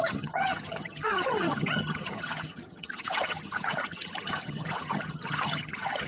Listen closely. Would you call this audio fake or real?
fake